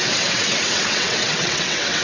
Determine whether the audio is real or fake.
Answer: fake